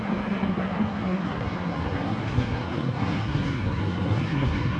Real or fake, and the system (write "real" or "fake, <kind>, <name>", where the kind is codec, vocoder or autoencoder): fake, codec, SNAC